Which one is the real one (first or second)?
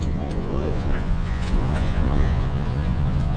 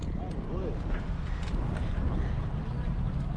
second